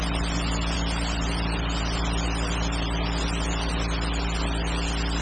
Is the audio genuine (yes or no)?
yes